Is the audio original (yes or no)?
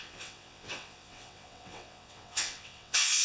no